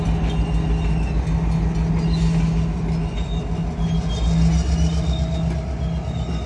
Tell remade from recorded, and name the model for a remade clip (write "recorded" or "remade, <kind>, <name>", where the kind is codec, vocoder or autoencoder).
recorded